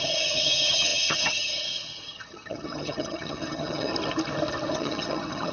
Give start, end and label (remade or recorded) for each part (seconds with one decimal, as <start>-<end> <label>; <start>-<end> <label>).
0.0-3.9 remade; 3.9-4.7 recorded; 4.7-5.5 remade